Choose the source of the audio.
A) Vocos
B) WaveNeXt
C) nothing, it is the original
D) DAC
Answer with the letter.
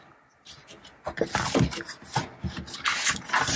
C